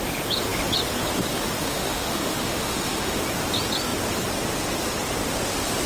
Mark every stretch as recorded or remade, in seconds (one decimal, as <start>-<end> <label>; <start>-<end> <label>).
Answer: 0.0-1.6 recorded; 1.6-3.2 remade; 3.2-5.9 recorded